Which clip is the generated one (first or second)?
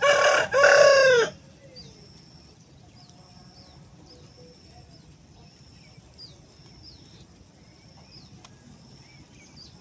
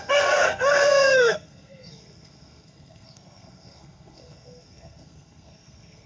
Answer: second